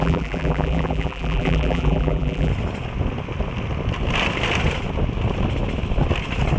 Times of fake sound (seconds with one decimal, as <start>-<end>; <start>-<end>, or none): 0.0-2.5